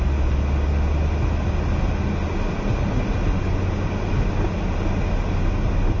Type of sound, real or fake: real